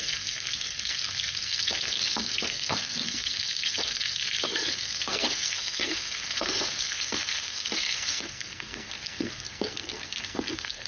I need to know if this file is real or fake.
fake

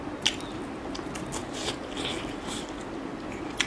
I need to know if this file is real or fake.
real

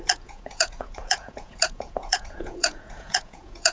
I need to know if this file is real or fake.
fake